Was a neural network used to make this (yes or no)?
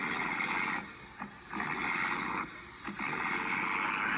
no